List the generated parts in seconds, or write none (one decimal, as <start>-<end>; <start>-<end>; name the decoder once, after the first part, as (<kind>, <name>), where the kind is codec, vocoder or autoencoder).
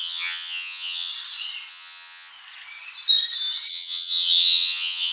0.0-1.1 (vocoder, HiFi-GAN); 1.7-2.3; 3.7-5.1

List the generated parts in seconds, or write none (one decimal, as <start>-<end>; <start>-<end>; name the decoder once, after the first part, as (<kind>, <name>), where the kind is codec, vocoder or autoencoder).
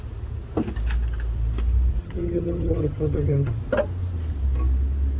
2.0-3.6 (vocoder, HiFi-GAN)